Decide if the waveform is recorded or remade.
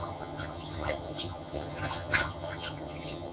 remade